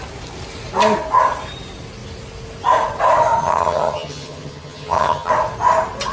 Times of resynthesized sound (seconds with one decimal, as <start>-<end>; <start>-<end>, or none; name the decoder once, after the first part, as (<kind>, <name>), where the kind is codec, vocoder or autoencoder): 3.4-5.3 (vocoder, HiFi-GAN)